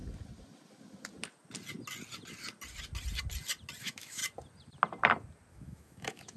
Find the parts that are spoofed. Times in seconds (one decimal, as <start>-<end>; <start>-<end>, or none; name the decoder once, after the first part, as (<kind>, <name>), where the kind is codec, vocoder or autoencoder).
3.8-4.2 (autoencoder, DAC-VAE); 5.5-6.4